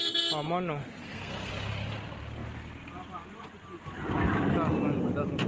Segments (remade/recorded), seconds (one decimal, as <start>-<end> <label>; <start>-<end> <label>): 0.0-1.0 recorded; 1.0-1.5 remade; 1.5-5.5 recorded